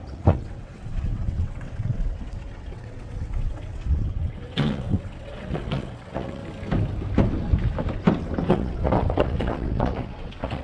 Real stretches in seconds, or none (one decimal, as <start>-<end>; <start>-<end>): 6.4-8.5